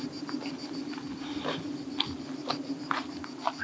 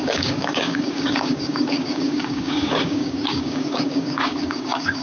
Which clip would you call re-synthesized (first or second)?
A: second